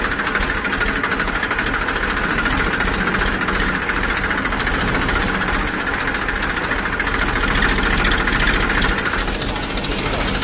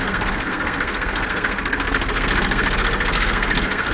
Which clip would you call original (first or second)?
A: first